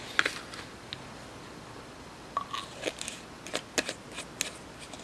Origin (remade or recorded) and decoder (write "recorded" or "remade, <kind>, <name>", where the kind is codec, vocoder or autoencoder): recorded